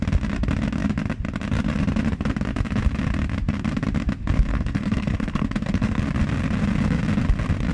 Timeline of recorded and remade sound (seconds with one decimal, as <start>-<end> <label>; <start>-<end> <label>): 0.0-4.5 recorded; 4.5-6.0 remade; 6.0-7.7 recorded